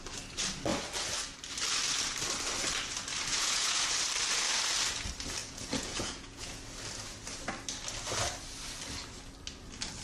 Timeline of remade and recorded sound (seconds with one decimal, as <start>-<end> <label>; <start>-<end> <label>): 0.0-3.3 recorded; 3.3-3.9 remade; 3.9-5.4 recorded; 5.4-6.6 remade; 6.6-10.0 recorded